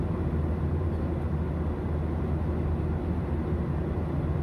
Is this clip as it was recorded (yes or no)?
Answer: yes